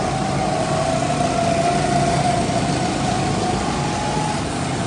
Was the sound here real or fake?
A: real